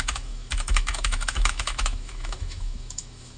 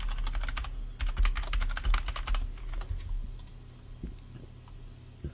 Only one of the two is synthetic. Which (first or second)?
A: first